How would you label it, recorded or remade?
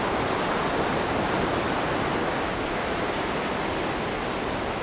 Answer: recorded